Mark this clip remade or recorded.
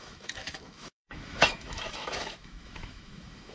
remade